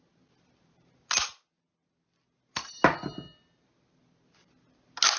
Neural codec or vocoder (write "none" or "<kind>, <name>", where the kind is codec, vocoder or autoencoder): none